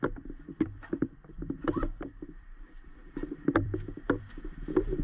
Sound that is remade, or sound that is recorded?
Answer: remade